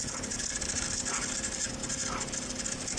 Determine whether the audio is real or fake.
real